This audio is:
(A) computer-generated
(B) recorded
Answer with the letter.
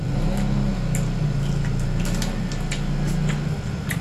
B